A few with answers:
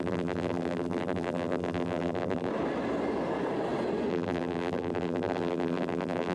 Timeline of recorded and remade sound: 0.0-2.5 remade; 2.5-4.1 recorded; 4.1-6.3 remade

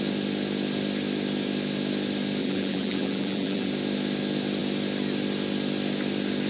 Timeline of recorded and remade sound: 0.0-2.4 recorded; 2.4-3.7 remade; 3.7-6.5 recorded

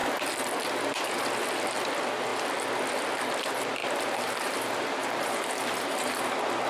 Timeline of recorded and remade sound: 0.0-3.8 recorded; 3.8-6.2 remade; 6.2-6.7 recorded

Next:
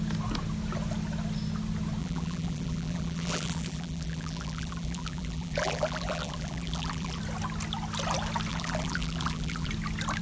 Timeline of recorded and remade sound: 0.0-2.0 recorded; 2.0-7.2 remade; 7.2-8.5 recorded; 8.5-9.7 remade; 9.7-10.2 recorded